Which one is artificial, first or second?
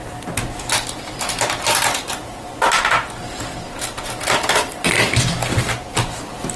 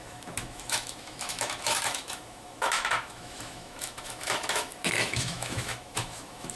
second